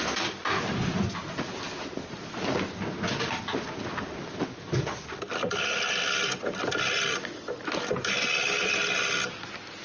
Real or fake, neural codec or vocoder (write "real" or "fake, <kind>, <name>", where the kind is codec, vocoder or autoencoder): real